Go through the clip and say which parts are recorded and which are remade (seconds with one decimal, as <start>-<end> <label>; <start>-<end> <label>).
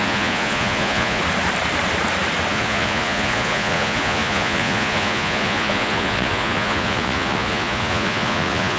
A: 0.0-1.2 remade; 1.2-2.5 recorded; 2.5-8.8 remade